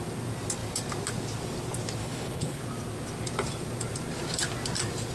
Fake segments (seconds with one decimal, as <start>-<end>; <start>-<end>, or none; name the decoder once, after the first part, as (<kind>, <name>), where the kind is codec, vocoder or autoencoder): 2.0-2.6 (codec, HILCodec)